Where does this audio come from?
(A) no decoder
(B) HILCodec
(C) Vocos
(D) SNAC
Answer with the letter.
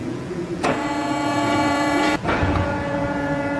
C